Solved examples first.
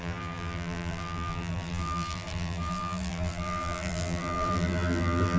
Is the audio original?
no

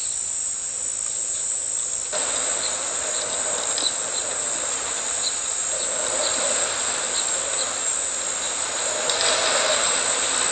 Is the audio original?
yes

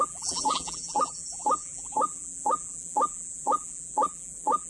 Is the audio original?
no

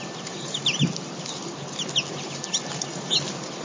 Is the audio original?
yes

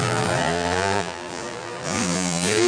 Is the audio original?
no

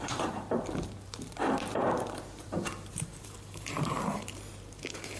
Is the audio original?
no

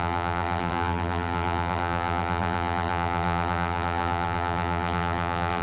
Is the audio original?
no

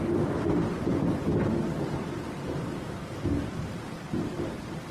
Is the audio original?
no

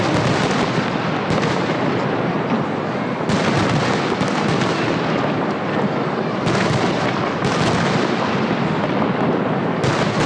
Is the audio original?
yes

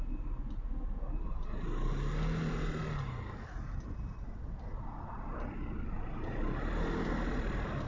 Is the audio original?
yes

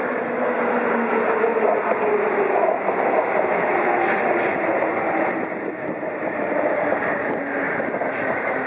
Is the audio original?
yes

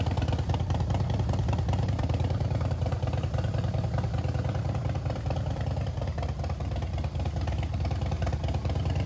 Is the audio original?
no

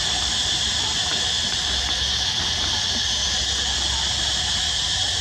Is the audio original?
yes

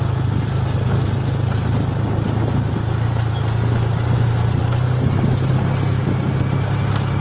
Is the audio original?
yes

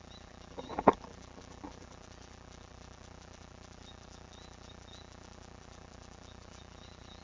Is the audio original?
no